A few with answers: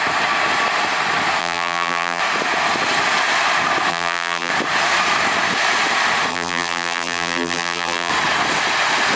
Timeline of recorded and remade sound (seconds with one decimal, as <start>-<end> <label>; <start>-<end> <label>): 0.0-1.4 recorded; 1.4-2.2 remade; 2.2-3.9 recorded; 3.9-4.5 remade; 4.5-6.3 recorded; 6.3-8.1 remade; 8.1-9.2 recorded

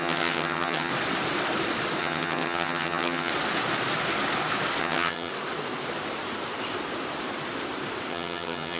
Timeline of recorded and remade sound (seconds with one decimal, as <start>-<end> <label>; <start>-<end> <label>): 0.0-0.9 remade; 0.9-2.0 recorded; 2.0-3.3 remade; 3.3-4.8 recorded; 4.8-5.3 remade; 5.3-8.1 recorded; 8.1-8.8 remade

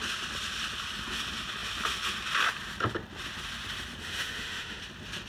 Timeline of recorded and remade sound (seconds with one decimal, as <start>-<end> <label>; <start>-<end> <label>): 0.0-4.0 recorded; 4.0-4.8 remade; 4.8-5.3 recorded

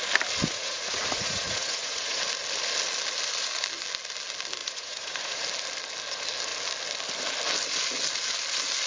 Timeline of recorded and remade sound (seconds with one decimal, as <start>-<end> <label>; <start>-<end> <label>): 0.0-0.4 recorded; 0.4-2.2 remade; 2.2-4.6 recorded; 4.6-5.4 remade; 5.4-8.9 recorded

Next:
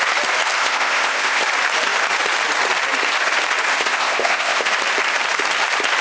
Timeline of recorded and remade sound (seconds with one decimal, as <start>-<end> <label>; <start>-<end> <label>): 0.0-0.6 recorded; 0.6-1.4 remade; 1.4-3.7 recorded; 3.7-4.7 remade; 4.7-6.0 recorded

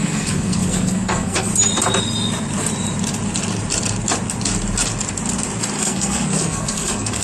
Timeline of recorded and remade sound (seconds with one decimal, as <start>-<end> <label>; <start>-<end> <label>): 0.0-1.5 remade; 1.5-5.8 recorded; 5.8-7.2 remade